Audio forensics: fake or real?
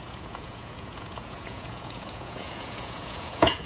fake